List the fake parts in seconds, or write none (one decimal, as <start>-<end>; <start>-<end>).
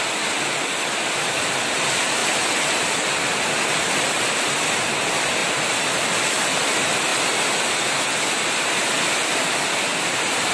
5.4-6.2; 9.9-10.5